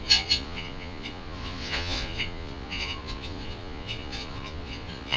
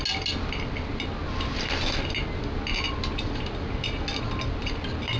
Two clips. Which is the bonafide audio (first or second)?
second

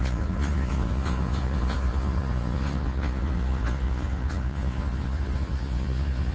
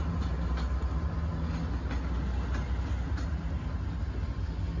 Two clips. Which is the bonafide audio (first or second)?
second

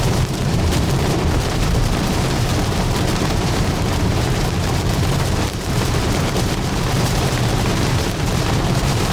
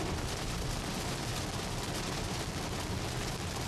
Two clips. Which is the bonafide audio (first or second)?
second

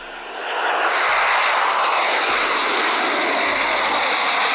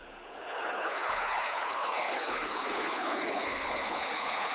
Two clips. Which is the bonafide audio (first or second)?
first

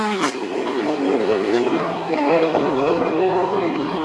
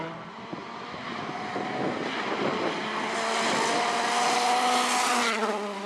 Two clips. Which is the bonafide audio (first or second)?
second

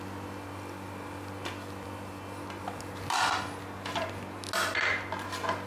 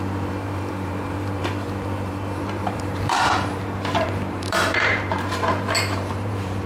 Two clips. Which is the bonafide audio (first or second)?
first